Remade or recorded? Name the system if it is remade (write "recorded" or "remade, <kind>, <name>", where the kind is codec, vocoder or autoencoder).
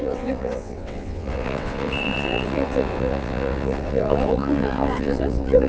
remade, vocoder, WaveNeXt